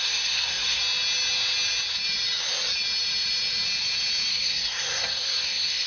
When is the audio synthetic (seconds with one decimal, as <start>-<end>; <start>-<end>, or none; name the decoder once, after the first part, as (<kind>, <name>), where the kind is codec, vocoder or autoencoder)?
0.0-0.8 (codec, SNAC); 4.3-5.9